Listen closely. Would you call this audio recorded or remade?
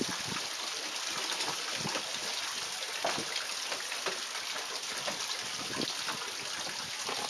recorded